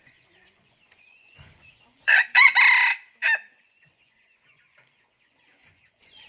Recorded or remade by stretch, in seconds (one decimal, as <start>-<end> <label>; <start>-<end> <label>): 0.0-2.5 remade; 2.5-3.6 recorded; 3.6-6.3 remade